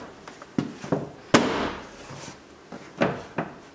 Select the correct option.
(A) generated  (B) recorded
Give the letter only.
B